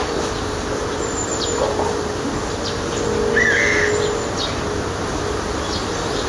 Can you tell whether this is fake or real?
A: real